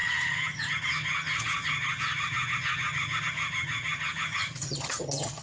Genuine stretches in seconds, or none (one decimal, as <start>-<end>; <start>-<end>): none